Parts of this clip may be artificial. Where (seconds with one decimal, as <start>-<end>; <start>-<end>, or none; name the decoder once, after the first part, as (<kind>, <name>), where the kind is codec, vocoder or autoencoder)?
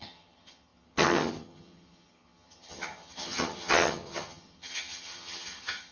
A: 0.0-5.9 (vocoder, HiFi-GAN)